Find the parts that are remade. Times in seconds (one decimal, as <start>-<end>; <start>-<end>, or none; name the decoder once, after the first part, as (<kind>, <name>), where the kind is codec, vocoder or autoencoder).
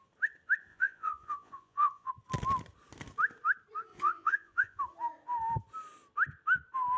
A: 0.7-2.1 (vocoder, Vocos); 3.9-4.8